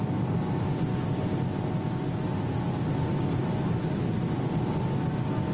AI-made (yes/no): no